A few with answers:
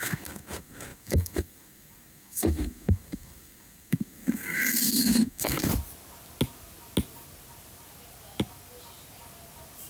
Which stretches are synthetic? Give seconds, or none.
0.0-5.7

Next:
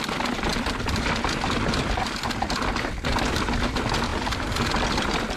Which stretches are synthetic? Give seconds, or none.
none